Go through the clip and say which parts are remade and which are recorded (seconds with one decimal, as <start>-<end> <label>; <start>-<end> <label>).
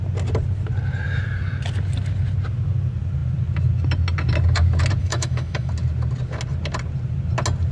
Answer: 0.0-5.0 recorded; 5.0-5.7 remade; 5.7-7.7 recorded